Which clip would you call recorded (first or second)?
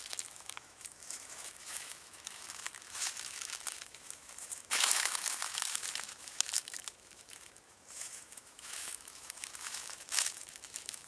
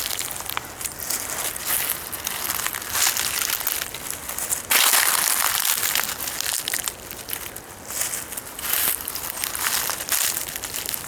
second